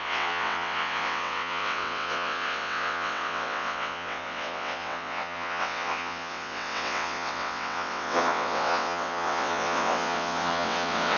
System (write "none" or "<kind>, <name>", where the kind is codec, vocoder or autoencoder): vocoder, WaveNeXt